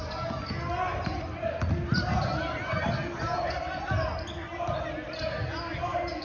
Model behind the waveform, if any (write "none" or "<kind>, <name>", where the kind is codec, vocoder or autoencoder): none